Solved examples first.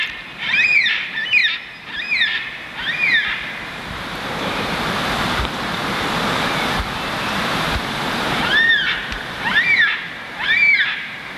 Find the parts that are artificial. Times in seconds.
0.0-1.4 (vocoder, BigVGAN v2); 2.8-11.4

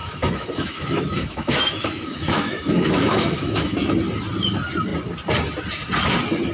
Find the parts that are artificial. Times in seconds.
0.0-3.9 (autoencoder, DAC-VAE)

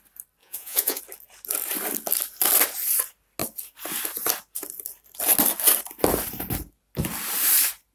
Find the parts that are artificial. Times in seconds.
0.4-1.0 (vocoder, Vocos)

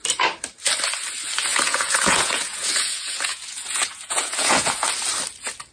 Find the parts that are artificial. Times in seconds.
1.5-4.9 (vocoder, Vocos)

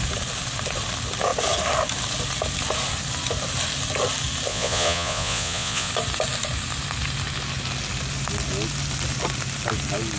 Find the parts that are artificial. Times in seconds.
4.5-5.9 (vocoder, Vocos)

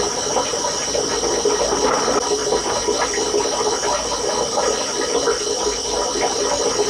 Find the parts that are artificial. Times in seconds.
none

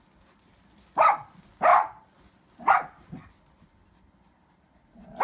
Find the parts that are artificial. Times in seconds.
none